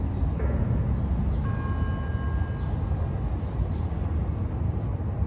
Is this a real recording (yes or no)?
yes